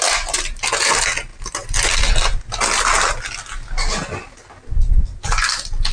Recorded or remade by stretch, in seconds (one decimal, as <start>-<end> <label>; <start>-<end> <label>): 0.0-5.9 recorded